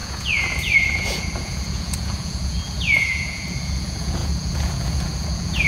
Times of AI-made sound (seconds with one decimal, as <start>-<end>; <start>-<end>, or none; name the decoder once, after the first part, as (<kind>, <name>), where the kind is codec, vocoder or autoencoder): 0.0-5.7 (vocoder, Vocos)